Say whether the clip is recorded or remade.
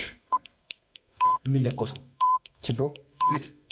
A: remade